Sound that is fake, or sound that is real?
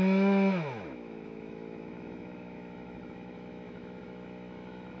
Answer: fake